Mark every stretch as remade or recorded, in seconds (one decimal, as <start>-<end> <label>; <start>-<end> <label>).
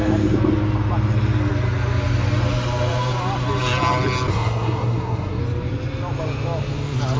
0.0-4.3 recorded; 4.3-5.4 remade; 5.4-7.2 recorded